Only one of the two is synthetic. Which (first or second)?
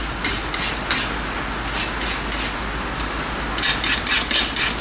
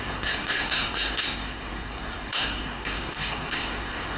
second